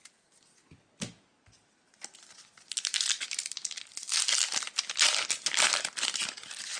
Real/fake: real